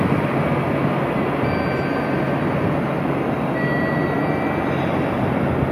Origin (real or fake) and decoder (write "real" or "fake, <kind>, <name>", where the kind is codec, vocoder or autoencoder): real